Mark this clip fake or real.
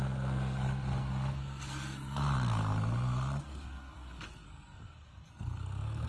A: fake